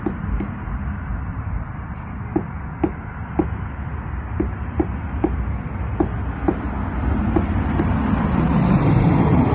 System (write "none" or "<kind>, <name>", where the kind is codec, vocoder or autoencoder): none